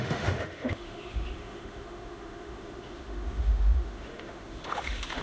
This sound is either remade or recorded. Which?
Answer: remade